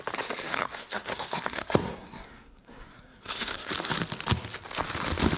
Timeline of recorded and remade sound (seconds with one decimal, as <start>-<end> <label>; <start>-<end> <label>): 0.0-0.5 recorded; 0.5-3.7 remade; 3.7-5.4 recorded